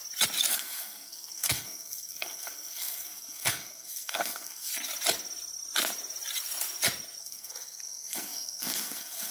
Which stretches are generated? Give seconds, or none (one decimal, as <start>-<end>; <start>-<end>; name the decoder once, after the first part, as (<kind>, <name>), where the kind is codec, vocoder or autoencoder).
0.5-4.7 (codec, SNAC); 7.2-9.3

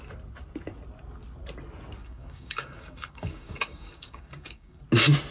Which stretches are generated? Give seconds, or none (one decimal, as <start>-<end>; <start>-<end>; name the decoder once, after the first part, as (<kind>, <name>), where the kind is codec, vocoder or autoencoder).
2.0-4.8 (codec, DAC)

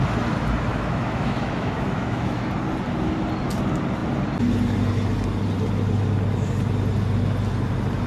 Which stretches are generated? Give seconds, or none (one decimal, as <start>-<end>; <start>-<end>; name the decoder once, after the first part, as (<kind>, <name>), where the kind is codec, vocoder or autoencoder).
0.7-2.5 (autoencoder, DAC-VAE)

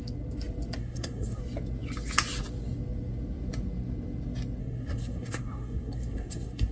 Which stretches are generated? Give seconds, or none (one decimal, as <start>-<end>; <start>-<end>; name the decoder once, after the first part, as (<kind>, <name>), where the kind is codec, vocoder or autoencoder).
0.8-1.4 (codec, SNAC); 4.6-6.7

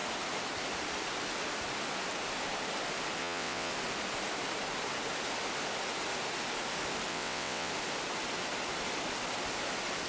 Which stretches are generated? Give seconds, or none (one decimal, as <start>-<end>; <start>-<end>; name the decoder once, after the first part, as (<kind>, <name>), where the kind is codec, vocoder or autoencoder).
3.2-3.7 (vocoder, WaveNeXt); 7.1-7.7